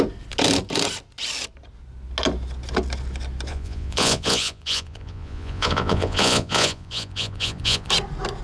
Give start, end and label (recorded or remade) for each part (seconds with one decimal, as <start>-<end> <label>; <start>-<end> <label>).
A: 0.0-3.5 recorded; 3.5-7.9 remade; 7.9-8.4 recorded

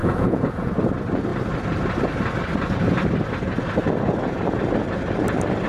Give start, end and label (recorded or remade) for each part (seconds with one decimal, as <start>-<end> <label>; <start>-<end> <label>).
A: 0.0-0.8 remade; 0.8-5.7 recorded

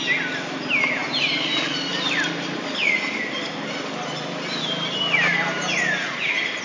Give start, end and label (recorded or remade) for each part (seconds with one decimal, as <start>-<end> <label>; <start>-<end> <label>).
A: 0.0-6.6 recorded